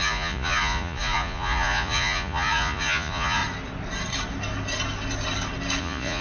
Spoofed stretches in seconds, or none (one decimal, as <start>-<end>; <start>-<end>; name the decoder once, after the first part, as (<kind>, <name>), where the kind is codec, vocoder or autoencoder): 0.0-3.4 (vocoder, Vocos); 5.8-6.2